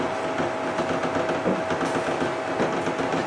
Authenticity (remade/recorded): recorded